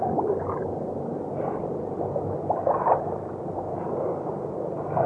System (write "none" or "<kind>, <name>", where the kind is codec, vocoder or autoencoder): none